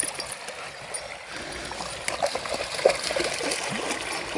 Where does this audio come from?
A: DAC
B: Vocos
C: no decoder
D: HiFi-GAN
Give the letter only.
C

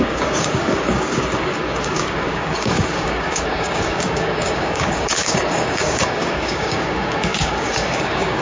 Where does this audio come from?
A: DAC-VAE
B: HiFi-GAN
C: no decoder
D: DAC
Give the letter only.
D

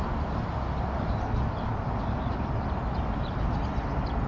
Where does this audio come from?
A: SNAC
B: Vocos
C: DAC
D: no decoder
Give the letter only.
D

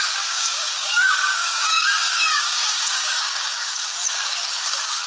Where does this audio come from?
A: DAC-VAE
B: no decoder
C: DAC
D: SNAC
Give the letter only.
C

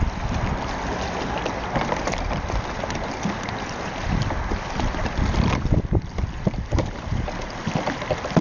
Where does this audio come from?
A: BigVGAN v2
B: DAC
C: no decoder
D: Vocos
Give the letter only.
C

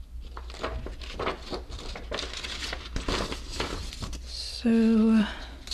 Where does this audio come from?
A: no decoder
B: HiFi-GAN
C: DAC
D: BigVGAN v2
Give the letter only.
A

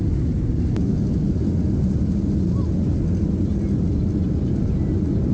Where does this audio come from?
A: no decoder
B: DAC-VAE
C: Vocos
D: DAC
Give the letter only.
A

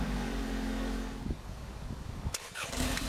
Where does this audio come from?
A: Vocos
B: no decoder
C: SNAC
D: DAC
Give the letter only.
D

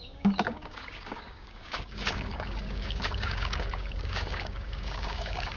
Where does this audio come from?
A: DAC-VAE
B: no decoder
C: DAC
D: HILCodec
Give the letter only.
C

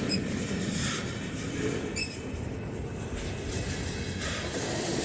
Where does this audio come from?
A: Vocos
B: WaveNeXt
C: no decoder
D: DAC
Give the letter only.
C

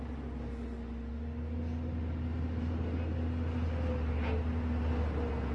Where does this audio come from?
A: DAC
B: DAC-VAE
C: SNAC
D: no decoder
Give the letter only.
D